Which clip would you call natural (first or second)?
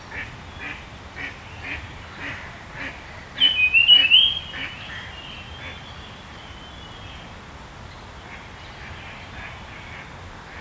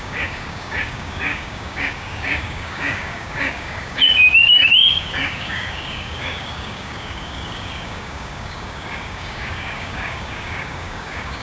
first